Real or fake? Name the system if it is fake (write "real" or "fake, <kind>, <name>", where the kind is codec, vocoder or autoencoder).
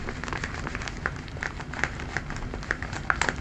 fake, vocoder, BigVGAN v2